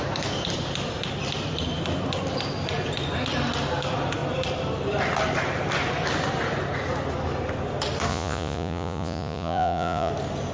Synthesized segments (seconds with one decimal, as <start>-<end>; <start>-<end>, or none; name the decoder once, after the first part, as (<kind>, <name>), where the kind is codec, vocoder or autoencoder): 8.1-10.1 (vocoder, Vocos)